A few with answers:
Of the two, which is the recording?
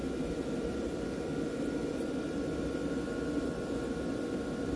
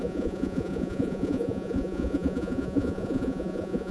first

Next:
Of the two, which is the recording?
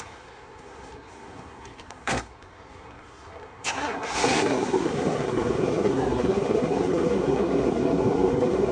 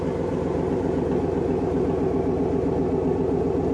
second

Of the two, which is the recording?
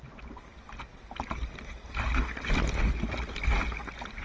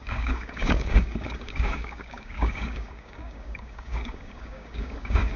first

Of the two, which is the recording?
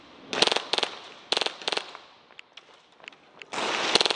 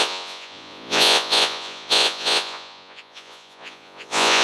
first